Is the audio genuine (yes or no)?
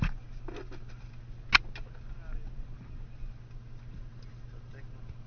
yes